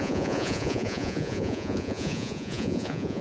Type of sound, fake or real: fake